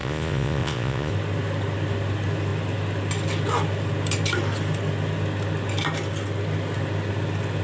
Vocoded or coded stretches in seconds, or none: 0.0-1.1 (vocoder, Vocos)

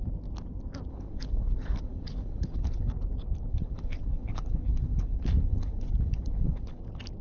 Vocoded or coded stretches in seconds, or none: 0.9-2.9 (codec, HILCodec); 3.5-6.8

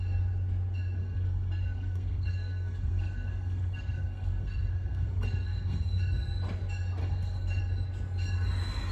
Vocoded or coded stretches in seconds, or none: 1.0-6.0 (codec, SNAC); 7.0-7.6

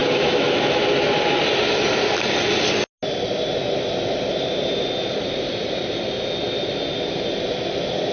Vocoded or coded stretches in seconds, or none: 0.0-0.8 (autoencoder, DAC-VAE)